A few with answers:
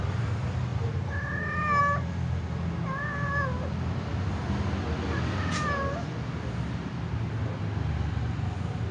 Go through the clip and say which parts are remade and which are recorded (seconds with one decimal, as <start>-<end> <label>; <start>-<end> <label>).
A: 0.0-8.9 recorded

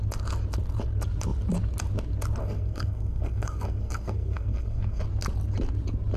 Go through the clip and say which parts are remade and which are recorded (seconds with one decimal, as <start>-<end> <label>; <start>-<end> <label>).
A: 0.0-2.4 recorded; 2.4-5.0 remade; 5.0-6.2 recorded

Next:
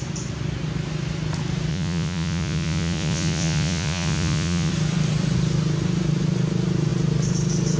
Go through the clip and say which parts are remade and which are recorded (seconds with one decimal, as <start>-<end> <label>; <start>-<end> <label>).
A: 0.0-1.7 recorded; 1.7-4.7 remade; 4.7-7.8 recorded